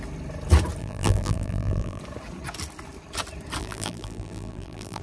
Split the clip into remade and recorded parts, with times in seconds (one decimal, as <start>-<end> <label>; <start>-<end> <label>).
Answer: 0.0-0.8 recorded; 0.8-2.0 remade; 2.0-3.6 recorded; 3.6-5.0 remade